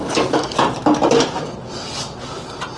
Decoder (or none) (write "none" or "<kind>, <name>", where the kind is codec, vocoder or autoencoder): none